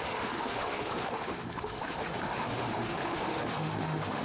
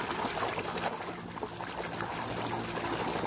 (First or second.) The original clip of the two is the second